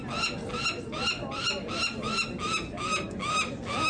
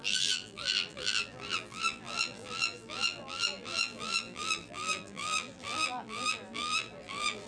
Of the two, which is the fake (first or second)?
second